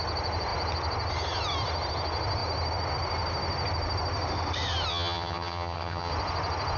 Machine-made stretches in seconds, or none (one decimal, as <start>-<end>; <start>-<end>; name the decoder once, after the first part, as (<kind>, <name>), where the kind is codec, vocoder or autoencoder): 4.9-6.1 (vocoder, HiFi-GAN)